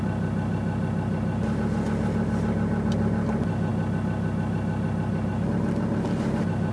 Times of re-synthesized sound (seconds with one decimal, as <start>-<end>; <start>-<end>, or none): none